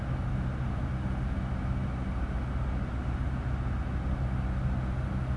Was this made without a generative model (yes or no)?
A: yes